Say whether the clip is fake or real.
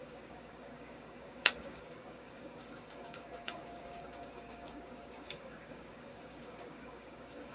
fake